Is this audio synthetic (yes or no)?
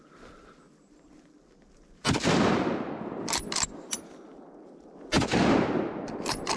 no